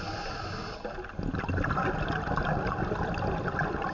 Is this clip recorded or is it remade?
recorded